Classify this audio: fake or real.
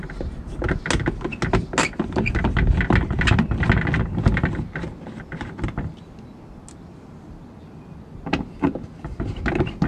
real